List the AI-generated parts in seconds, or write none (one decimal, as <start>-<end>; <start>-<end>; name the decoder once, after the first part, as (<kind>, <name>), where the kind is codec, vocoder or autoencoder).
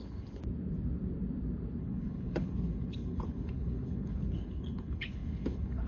0.0-0.4 (codec, HILCodec); 1.8-5.9